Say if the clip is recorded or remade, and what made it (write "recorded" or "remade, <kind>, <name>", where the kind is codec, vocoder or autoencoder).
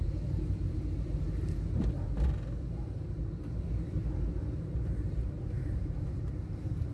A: remade, vocoder, BigVGAN v2